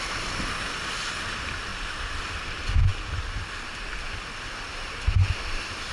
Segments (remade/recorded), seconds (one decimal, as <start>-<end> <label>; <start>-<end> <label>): 0.0-1.7 recorded; 1.7-2.2 remade; 2.2-5.9 recorded